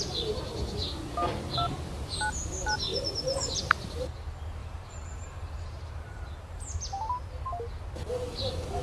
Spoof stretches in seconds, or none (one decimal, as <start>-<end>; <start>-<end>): 2.9-3.6; 4.6-6.7